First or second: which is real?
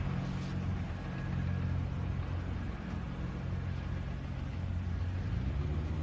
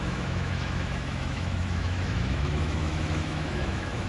first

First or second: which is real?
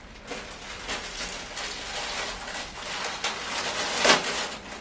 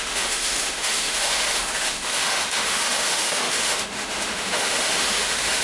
first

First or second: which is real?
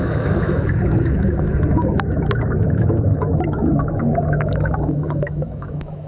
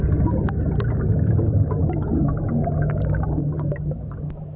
second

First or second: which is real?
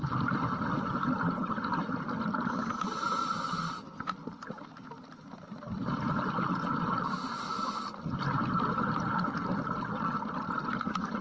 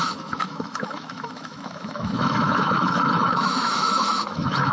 first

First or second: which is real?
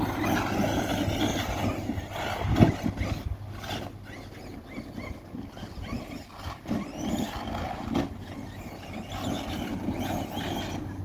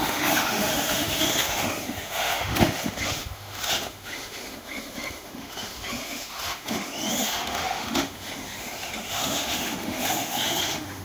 first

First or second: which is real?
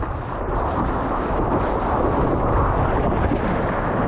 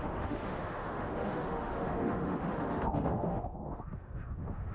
first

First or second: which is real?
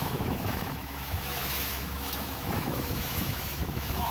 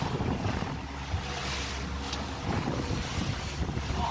second